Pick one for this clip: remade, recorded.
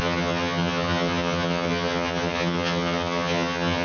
remade